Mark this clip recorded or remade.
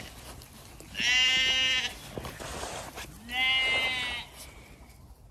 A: recorded